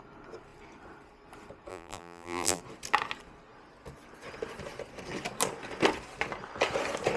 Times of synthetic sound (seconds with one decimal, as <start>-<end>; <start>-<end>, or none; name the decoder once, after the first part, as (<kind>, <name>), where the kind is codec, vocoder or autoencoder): 1.7-2.6 (vocoder, BigVGAN v2)